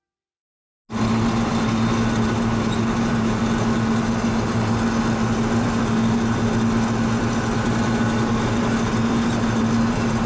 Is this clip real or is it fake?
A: real